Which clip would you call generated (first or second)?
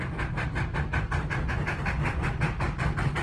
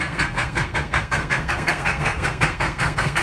second